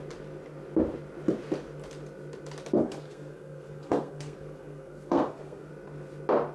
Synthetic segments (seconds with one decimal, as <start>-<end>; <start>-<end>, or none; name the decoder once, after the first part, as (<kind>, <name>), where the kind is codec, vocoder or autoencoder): 2.8-5.7 (codec, SNAC)